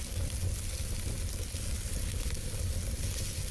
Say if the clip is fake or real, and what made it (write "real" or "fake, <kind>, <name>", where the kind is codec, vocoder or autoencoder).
real